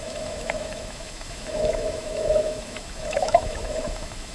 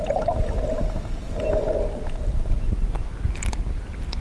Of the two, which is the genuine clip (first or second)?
second